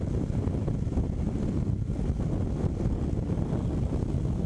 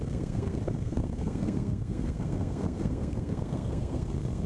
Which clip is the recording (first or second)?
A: first